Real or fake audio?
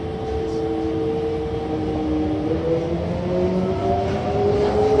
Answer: real